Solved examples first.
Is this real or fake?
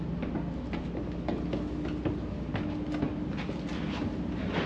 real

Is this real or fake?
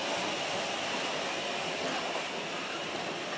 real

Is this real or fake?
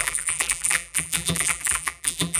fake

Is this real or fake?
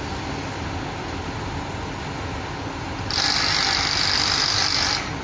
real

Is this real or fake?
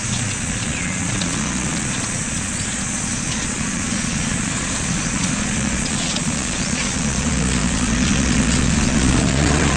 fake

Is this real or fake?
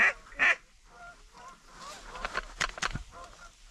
real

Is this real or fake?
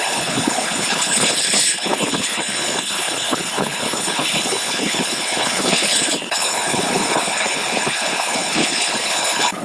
fake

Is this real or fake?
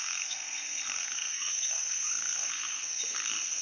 fake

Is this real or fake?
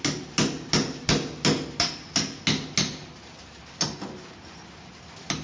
real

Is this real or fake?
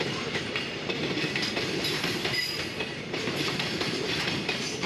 fake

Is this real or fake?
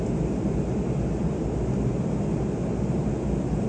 real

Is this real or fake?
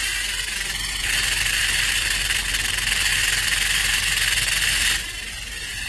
real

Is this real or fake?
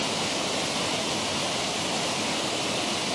real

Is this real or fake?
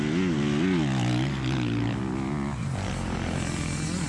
real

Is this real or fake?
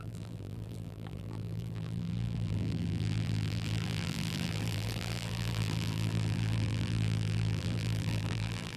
fake